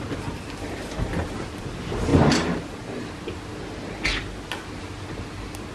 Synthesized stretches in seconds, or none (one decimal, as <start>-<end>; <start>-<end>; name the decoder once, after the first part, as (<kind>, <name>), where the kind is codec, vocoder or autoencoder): none